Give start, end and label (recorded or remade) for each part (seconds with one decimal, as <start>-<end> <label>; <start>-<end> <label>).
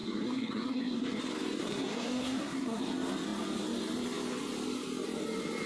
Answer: 0.0-1.2 remade; 1.2-1.6 recorded; 1.6-2.8 remade; 2.8-5.7 recorded